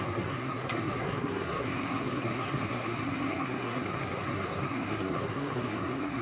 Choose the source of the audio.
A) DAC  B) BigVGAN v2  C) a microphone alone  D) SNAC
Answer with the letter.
D